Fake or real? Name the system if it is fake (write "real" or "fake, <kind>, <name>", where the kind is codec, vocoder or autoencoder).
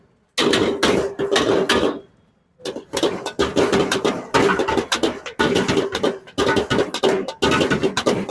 real